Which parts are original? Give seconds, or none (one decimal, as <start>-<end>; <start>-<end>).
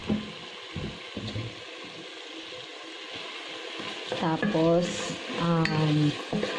0.0-6.6